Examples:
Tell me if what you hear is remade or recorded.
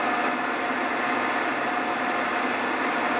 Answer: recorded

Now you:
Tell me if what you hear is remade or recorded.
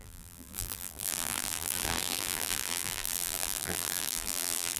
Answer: remade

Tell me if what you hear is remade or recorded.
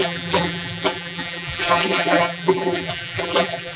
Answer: remade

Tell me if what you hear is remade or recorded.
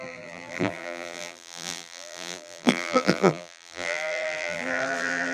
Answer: remade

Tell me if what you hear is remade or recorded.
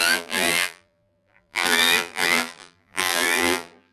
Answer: remade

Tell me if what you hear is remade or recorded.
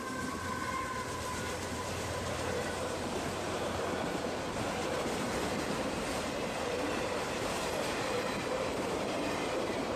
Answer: remade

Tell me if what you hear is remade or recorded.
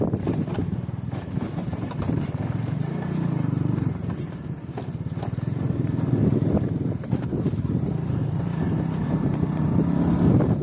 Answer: remade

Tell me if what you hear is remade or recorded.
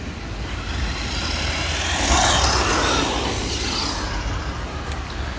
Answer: recorded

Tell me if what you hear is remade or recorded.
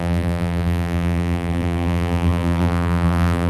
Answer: remade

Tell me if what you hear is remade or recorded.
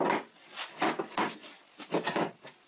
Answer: recorded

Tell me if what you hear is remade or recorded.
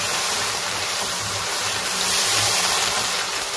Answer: remade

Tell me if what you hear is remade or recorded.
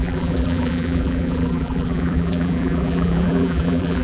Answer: remade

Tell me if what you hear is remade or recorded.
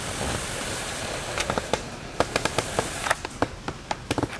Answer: recorded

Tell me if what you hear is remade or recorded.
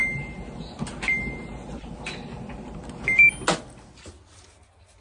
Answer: recorded